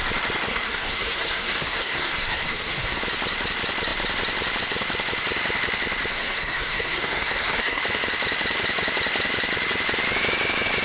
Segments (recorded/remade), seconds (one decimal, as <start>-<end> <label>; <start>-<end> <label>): 0.0-0.5 recorded; 0.5-3.0 remade; 3.0-6.1 recorded; 6.1-7.8 remade; 7.8-10.8 recorded